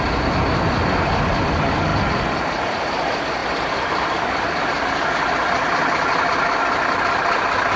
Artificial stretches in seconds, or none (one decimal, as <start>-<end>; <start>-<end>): none